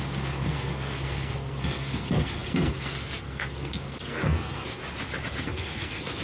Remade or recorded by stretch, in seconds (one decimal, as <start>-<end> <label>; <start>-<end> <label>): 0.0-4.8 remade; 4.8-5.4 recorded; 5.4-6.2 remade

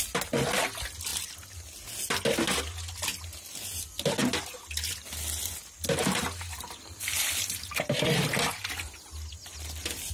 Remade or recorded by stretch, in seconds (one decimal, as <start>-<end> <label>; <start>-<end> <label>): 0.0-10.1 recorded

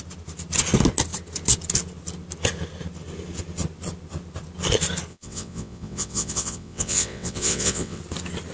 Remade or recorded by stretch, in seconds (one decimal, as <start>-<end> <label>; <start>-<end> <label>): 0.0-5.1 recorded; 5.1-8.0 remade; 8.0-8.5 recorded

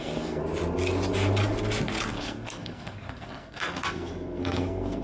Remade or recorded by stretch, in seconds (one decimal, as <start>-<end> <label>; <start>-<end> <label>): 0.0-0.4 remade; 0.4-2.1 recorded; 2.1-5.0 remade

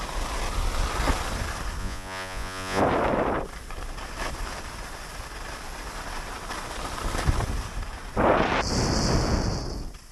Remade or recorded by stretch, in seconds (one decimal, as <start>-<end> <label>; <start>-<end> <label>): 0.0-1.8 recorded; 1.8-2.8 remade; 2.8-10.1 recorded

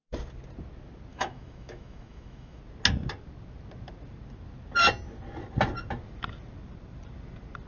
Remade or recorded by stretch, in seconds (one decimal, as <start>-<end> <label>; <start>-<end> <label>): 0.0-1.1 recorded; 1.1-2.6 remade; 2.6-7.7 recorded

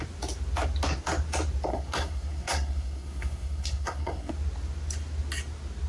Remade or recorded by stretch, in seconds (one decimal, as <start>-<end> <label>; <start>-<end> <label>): 0.0-1.7 recorded; 1.7-4.3 remade; 4.3-5.9 recorded